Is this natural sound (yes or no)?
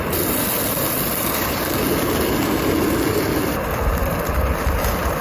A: yes